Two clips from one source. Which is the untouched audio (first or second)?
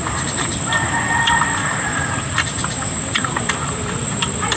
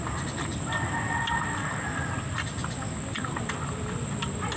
second